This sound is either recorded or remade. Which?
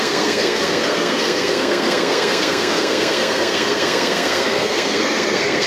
remade